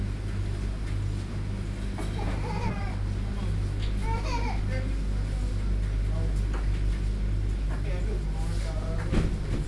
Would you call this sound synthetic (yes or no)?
no